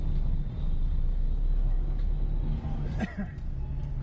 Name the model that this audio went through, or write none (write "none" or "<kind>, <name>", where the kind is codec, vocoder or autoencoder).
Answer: none